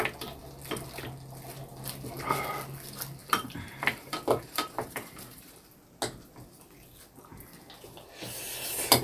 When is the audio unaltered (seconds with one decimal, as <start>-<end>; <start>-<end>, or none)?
0.0-3.2; 5.5-9.0